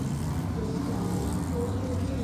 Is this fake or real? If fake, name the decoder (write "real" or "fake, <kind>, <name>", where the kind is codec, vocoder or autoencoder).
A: real